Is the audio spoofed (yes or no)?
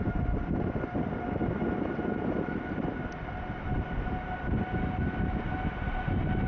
no